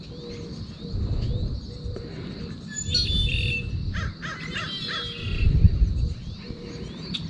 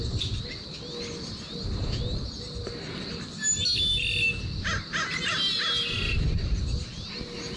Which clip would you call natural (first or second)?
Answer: second